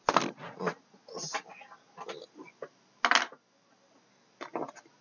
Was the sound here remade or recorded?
recorded